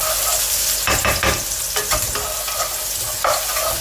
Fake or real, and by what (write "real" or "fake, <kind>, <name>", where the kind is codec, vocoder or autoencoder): real